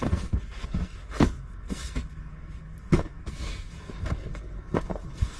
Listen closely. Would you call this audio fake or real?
fake